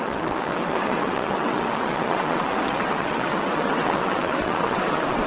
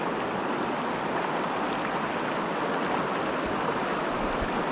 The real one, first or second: second